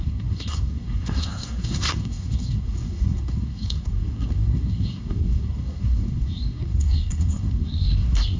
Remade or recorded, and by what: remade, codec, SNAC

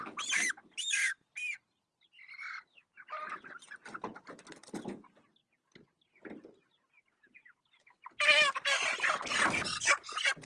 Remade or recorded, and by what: recorded